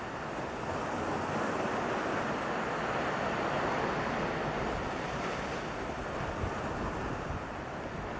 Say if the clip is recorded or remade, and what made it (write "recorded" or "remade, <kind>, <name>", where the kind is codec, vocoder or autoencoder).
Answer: recorded